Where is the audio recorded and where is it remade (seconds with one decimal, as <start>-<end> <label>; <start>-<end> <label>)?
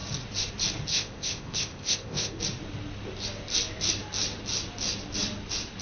0.0-0.9 recorded; 0.9-2.4 remade; 2.4-5.8 recorded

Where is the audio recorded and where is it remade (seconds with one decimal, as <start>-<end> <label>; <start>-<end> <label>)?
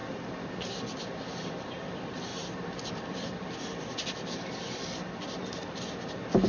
0.0-6.5 recorded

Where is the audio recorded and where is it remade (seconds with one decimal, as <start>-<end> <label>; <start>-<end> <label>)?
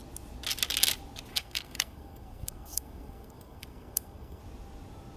0.0-1.3 recorded; 1.3-4.4 remade; 4.4-5.2 recorded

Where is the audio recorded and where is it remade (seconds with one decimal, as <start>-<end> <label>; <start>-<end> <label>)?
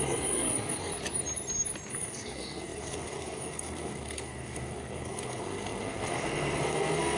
0.0-0.9 remade; 0.9-1.9 recorded; 1.9-7.2 remade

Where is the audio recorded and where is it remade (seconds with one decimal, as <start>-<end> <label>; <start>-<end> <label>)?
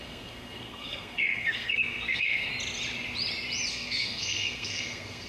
0.0-2.5 remade; 2.5-3.7 recorded; 3.7-5.3 remade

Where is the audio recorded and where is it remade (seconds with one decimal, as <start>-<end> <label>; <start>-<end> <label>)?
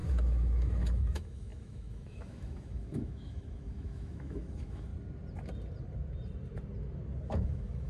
0.0-4.9 remade; 4.9-7.3 recorded; 7.3-7.9 remade